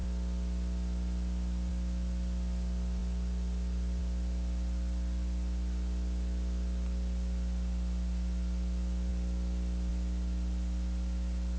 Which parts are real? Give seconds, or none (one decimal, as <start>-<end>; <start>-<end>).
0.0-11.6